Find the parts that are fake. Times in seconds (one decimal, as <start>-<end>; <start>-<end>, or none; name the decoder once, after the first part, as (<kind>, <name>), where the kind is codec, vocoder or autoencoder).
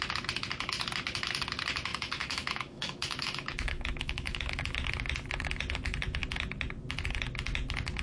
1.9-4.5 (autoencoder, DAC-VAE)